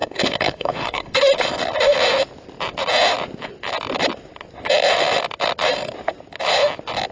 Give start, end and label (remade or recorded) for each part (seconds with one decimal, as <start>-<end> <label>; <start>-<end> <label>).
0.0-1.2 remade; 1.2-7.1 recorded